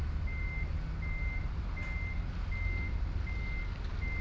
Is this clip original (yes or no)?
yes